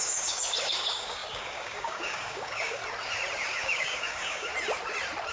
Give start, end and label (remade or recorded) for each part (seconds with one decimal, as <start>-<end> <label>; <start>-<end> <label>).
0.0-2.8 remade; 2.8-3.5 recorded; 3.5-4.5 remade; 4.5-5.3 recorded